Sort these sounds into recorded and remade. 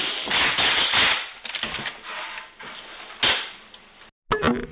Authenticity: recorded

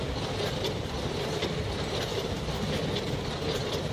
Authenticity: remade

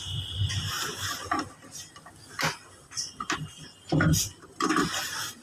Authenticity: recorded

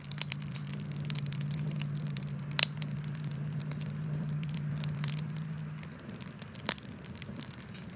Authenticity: remade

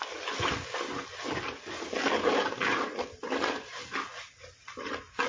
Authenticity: recorded